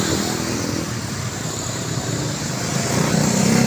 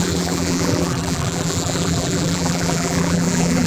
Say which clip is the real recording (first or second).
first